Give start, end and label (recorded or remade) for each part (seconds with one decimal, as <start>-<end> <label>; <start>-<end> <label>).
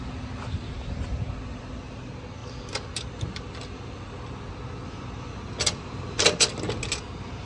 0.0-7.5 recorded